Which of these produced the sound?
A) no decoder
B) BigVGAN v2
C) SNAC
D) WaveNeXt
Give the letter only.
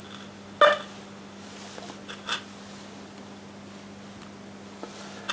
A